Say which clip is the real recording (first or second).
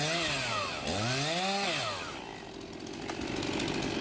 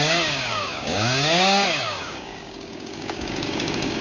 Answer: first